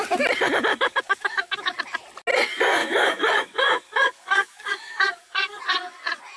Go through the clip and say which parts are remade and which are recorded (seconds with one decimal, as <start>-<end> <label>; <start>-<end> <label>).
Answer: 0.0-0.7 recorded; 0.7-1.7 remade; 1.7-2.8 recorded; 2.8-5.6 remade; 5.6-6.4 recorded